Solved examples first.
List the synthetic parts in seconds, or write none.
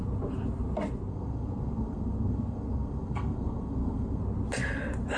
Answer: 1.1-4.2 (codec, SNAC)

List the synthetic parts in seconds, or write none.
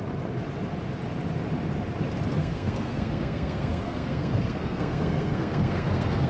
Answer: 2.4-6.3 (codec, SNAC)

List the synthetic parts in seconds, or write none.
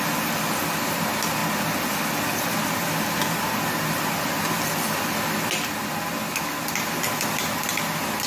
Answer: none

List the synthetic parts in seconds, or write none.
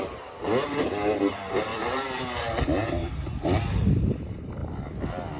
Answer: none